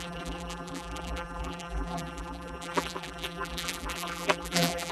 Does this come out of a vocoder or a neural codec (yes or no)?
yes